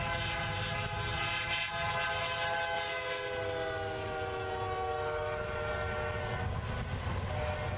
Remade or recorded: recorded